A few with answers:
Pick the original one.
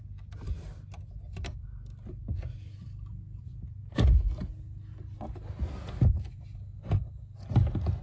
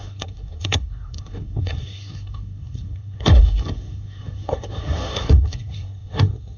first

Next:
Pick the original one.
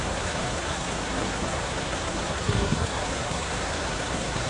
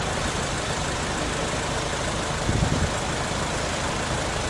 second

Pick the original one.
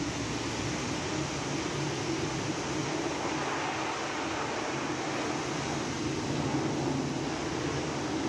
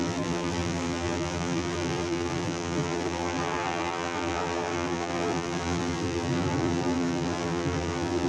first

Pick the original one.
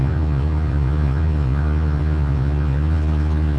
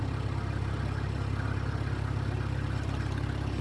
second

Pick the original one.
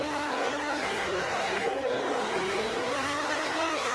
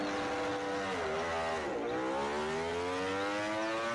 second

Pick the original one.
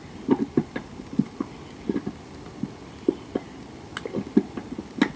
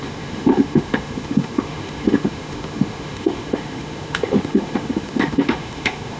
first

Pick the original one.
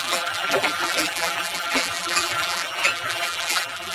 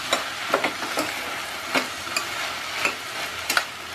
second